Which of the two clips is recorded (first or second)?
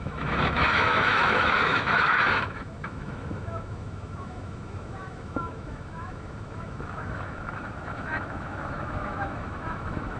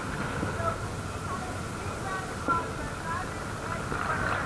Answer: second